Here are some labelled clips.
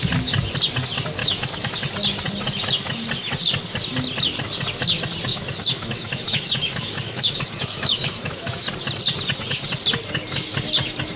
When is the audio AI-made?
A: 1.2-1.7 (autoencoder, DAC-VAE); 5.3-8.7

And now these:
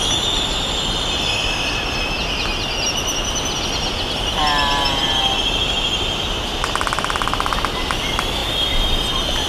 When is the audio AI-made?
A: none

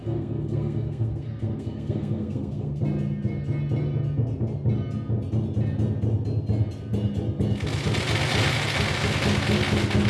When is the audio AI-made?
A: 0.0-2.8 (codec, SNAC)

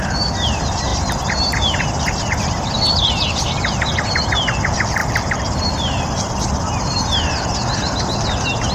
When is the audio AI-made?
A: 5.0-5.7 (vocoder, BigVGAN v2)